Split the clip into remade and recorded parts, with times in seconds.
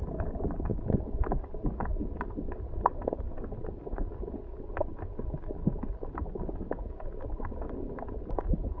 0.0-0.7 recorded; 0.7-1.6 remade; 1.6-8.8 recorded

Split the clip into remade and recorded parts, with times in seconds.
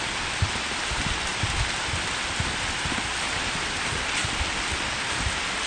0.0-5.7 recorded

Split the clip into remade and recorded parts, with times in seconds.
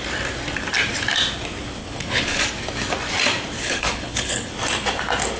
0.0-1.8 recorded; 1.8-2.4 remade; 2.4-3.6 recorded; 3.6-4.5 remade; 4.5-5.4 recorded